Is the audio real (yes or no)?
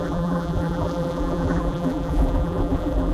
no